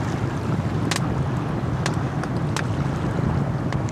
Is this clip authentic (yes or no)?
yes